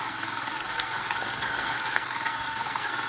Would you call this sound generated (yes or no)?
yes